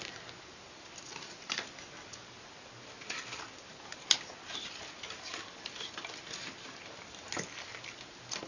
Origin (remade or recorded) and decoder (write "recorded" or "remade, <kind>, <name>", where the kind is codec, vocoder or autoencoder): recorded